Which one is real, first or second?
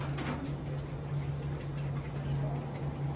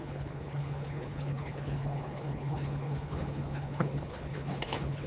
first